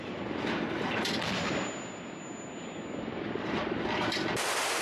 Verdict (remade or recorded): recorded